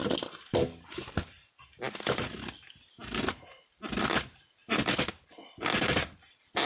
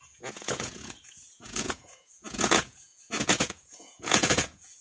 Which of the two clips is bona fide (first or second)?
first